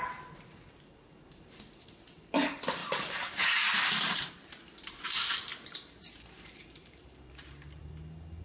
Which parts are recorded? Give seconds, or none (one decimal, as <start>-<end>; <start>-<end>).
0.0-2.8; 4.3-5.5; 7.8-8.4